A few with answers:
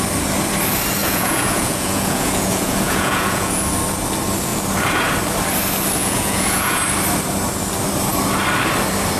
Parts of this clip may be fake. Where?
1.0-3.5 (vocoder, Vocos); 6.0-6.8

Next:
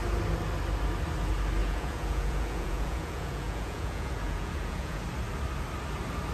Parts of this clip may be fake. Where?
1.6-5.0 (vocoder, Vocos)